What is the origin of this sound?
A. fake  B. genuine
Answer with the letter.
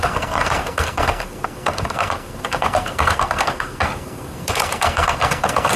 A